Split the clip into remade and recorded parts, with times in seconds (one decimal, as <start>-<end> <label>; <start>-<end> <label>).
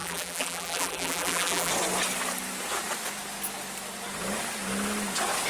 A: 0.0-1.7 remade; 1.7-5.5 recorded